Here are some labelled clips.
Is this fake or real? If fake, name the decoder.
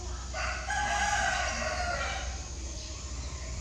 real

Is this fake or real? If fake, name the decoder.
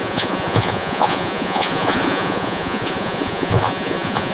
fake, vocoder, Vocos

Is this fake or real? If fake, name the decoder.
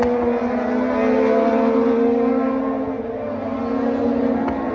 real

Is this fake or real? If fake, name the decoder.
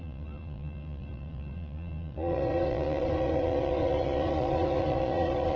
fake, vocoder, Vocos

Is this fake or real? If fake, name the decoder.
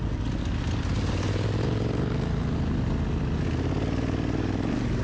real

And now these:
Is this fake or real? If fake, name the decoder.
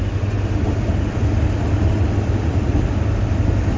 real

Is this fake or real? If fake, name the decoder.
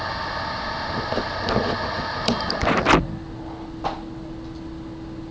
real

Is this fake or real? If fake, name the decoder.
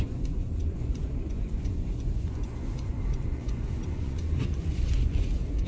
fake, vocoder, Vocos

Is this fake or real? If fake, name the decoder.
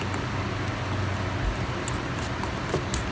real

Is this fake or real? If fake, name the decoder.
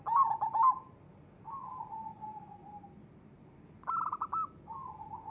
real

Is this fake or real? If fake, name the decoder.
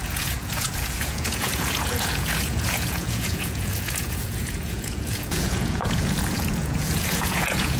fake, vocoder, Vocos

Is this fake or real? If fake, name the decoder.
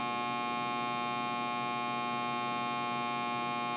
real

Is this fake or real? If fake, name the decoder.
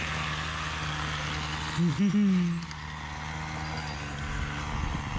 real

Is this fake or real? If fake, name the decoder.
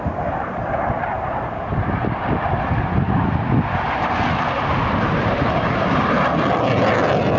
real